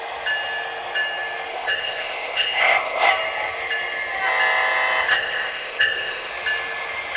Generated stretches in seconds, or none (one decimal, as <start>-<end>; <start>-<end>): 1.5-3.1; 5.1-6.3